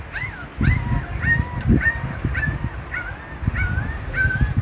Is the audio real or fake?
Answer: real